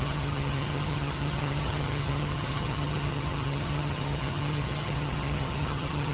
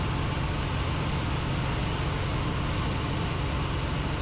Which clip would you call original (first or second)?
second